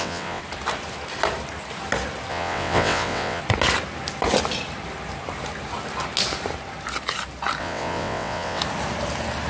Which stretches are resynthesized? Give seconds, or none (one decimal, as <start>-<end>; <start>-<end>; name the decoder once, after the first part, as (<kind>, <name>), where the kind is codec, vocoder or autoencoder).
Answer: 0.0-0.4 (vocoder, WaveNeXt); 2.3-3.4; 7.6-8.6